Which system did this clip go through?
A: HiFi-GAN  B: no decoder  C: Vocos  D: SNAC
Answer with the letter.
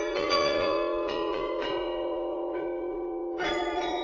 C